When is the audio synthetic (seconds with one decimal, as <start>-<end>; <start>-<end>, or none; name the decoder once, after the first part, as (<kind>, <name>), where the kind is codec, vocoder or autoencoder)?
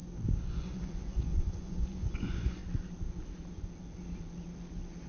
0.5-2.6 (vocoder, Vocos)